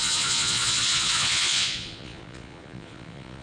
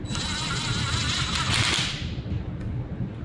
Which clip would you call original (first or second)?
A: second